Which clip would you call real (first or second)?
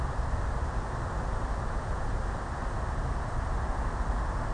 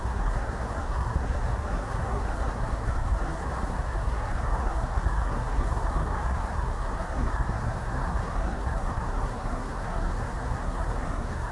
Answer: first